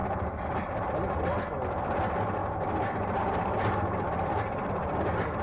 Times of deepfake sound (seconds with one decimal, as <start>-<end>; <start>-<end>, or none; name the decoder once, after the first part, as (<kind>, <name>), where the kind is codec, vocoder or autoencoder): 0.0-1.1 (vocoder, BigVGAN v2); 2.4-4.7